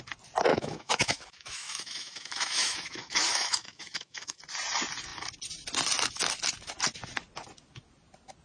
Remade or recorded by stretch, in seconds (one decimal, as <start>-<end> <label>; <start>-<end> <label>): 0.0-0.5 recorded; 0.5-4.4 remade; 4.4-8.4 recorded